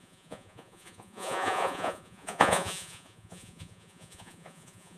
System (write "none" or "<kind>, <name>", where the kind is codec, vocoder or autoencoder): vocoder, Vocos